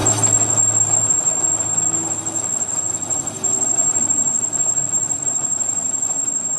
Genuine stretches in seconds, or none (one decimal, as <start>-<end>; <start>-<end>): 0.0-6.6